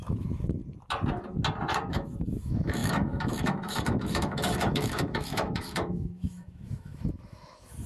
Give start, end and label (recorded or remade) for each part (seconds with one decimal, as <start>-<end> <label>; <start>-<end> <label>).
0.0-0.6 remade; 0.6-1.9 recorded; 1.9-7.9 remade